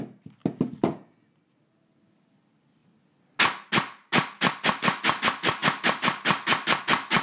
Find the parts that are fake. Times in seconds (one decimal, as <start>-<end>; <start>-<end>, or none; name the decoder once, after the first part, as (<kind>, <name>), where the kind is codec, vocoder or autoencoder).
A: none